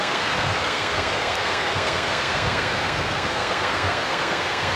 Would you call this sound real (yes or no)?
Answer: no